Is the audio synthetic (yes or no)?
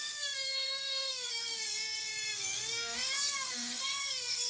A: yes